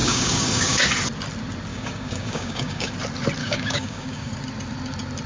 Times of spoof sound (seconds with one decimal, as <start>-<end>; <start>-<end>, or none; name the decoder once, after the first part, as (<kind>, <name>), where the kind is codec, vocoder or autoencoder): 0.0-0.8 (codec, DAC); 1.7-2.9; 3.4-4.3